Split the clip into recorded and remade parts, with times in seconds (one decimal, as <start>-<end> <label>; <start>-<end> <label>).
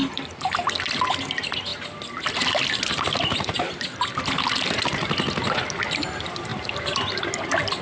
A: 0.0-0.5 remade; 0.5-6.5 recorded; 6.5-7.8 remade